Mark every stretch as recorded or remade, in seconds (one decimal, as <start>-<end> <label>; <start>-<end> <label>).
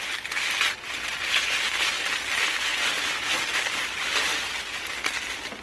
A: 0.0-2.7 recorded; 2.7-3.5 remade; 3.5-4.3 recorded; 4.3-4.9 remade; 4.9-5.6 recorded